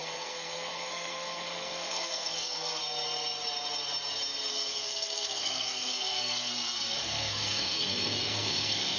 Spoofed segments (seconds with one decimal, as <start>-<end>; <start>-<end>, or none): 0.0-2.8; 4.5-9.0